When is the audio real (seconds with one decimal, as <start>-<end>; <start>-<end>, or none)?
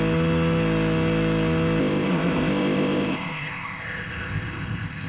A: 0.0-1.8